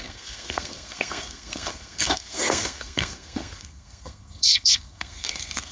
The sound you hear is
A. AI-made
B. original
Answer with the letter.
A